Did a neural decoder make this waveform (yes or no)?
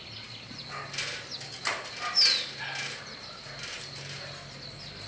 no